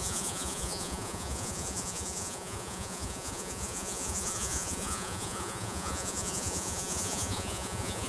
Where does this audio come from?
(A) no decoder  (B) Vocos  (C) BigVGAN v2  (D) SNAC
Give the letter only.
B